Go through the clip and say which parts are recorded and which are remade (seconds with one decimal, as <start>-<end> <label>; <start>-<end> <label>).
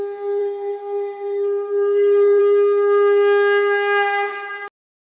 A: 0.0-0.4 recorded; 0.4-2.4 remade; 2.4-5.1 recorded